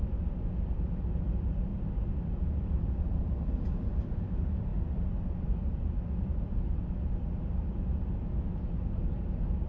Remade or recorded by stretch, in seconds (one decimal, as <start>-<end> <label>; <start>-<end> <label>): 0.0-9.7 recorded